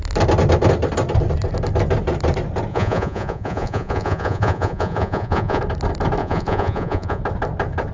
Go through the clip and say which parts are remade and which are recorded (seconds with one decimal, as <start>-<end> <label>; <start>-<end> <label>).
0.0-2.7 recorded; 2.7-5.6 remade; 5.6-6.2 recorded; 6.2-7.2 remade; 7.2-7.9 recorded